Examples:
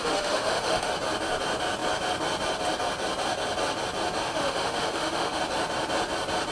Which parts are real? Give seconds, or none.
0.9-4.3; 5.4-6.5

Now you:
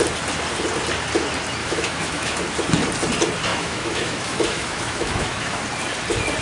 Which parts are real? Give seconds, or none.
0.0-1.6; 2.4-3.5; 5.6-6.4

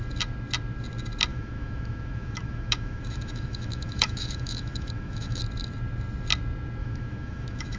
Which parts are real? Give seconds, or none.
0.0-1.3; 5.4-6.8

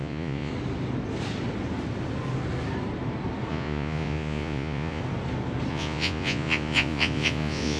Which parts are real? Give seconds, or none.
0.5-3.5; 5.0-5.7

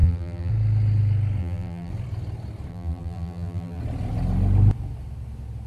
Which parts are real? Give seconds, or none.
0.5-1.4; 1.9-2.7; 3.8-5.7

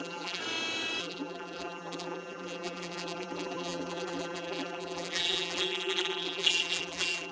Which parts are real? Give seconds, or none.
0.4-1.0